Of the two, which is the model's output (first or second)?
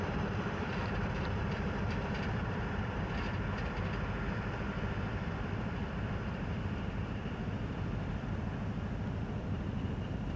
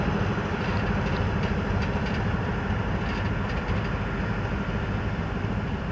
first